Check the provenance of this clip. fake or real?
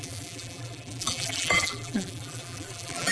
fake